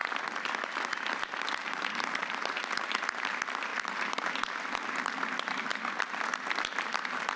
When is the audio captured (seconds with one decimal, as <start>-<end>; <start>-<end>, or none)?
0.0-1.6; 2.6-3.7; 4.3-7.4